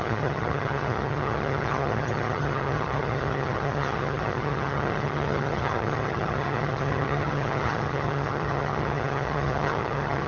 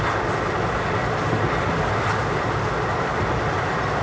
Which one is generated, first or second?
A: first